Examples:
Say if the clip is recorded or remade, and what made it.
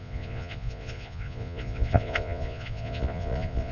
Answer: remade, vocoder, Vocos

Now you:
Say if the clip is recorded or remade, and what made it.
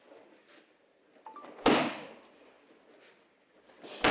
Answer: recorded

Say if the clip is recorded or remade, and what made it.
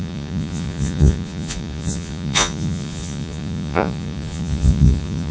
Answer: remade, vocoder, Vocos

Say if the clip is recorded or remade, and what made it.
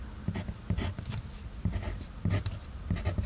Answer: recorded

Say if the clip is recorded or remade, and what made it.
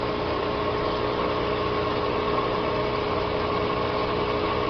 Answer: recorded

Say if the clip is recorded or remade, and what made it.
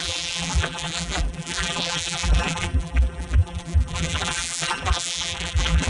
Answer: remade, vocoder, BigVGAN v2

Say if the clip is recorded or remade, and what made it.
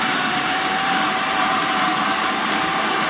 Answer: remade, vocoder, BigVGAN v2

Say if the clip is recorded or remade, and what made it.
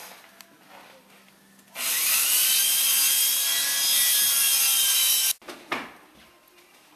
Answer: recorded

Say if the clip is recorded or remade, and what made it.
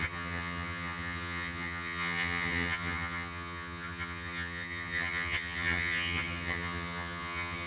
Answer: remade, vocoder, HiFi-GAN